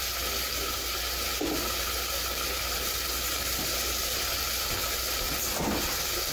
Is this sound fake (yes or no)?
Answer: no